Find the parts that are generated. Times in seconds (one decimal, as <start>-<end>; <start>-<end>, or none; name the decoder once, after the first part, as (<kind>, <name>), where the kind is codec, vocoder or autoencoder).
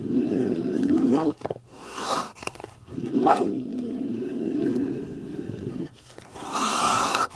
0.0-7.4 (codec, SNAC)